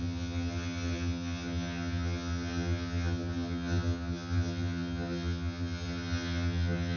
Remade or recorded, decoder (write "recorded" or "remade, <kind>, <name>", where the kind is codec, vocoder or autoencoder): remade, vocoder, HiFi-GAN